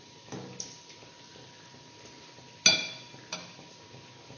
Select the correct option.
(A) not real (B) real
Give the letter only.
B